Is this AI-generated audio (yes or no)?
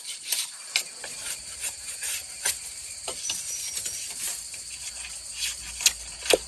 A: yes